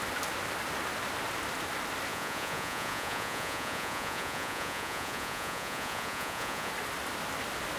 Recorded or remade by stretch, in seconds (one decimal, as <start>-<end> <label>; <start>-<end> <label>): 0.0-2.1 recorded; 2.1-6.7 remade; 6.7-7.8 recorded